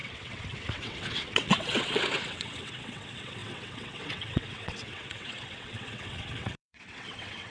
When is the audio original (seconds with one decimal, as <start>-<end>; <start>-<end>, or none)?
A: none